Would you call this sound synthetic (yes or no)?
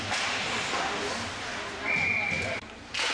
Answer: no